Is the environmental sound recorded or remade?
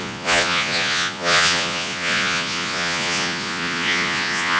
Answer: remade